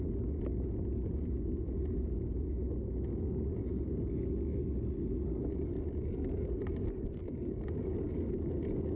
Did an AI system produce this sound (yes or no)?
no